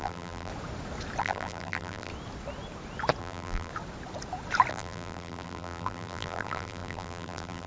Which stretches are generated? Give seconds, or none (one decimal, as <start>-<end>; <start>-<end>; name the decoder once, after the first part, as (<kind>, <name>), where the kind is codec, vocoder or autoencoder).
0.0-0.5 (vocoder, BigVGAN v2); 1.2-2.1; 3.2-3.7; 4.7-7.7